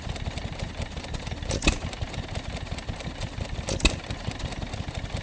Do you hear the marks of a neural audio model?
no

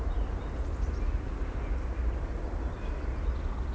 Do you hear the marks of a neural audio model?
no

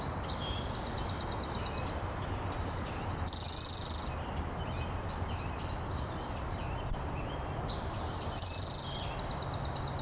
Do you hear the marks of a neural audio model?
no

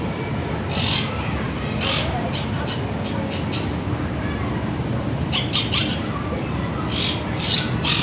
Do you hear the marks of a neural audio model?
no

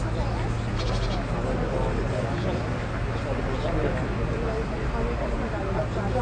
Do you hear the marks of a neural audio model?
no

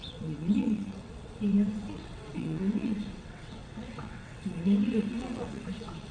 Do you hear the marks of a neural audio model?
yes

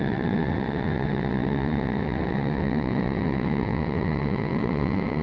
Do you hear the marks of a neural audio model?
yes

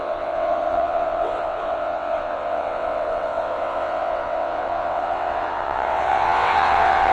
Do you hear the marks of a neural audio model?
yes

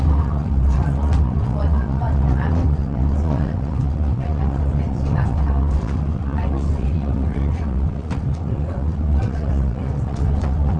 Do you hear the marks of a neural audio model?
yes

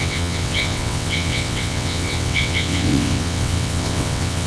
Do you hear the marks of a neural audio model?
yes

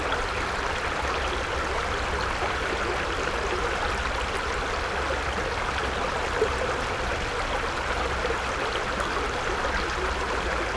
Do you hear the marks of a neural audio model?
no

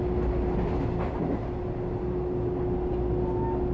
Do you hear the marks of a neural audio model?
no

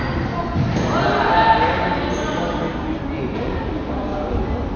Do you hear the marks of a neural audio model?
no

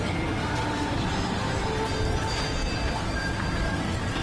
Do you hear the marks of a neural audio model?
no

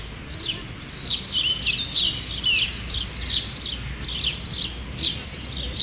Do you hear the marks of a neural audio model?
no